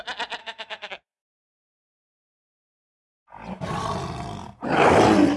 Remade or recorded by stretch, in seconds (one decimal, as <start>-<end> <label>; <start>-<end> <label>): 0.0-0.4 recorded; 0.4-0.9 remade; 0.9-5.4 recorded